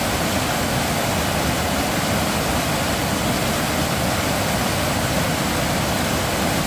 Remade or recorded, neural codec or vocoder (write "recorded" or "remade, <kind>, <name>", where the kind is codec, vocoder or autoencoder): recorded